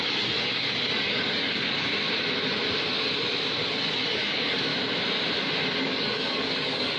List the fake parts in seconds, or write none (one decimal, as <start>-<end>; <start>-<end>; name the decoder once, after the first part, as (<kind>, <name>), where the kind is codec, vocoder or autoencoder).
0.0-1.9 (codec, DAC); 3.8-4.7; 5.8-7.0